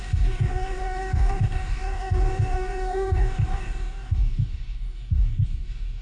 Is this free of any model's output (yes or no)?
no